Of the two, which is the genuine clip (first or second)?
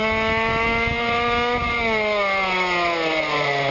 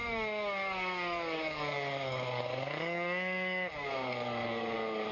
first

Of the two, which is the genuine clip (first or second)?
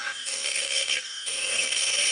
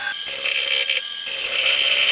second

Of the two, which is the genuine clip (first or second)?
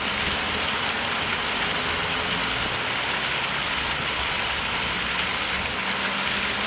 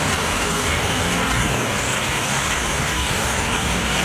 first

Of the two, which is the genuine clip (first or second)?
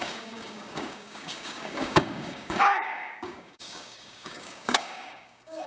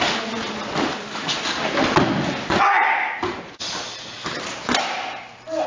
second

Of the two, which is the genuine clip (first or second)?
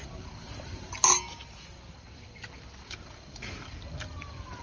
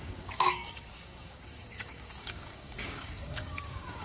first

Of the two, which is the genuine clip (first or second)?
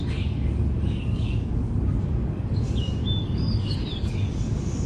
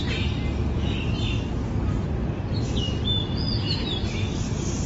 second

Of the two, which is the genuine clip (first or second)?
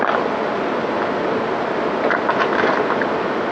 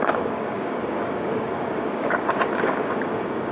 first